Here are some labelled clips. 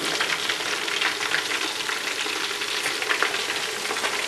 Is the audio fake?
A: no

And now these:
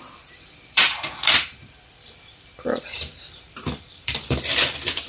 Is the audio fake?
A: yes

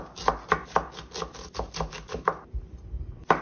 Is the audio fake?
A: no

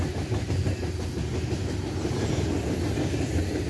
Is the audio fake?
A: no